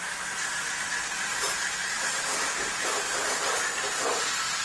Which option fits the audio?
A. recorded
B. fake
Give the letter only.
A